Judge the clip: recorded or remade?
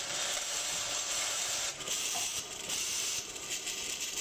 remade